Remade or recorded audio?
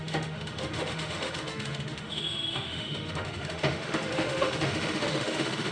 remade